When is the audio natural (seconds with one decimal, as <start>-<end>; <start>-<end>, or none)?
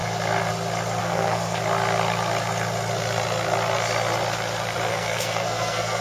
0.0-1.0; 1.6-4.9